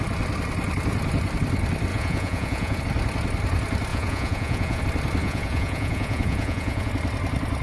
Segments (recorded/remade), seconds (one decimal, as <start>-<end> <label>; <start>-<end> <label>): 0.0-1.9 recorded; 1.9-2.8 remade; 2.8-3.9 recorded; 3.9-4.8 remade; 4.8-5.2 recorded; 5.2-6.9 remade; 6.9-7.6 recorded